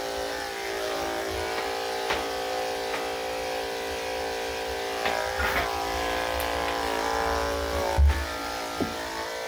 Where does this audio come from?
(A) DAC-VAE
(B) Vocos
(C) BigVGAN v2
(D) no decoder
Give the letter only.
D